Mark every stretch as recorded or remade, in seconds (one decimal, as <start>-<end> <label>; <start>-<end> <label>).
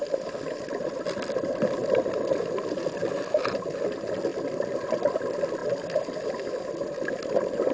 0.0-4.3 recorded; 4.3-5.1 remade; 5.1-5.6 recorded; 5.6-6.6 remade; 6.6-7.7 recorded